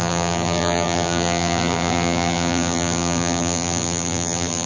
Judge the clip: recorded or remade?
remade